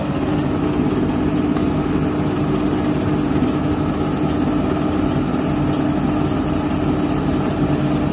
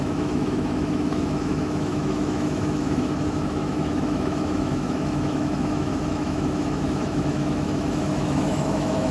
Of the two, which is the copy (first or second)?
second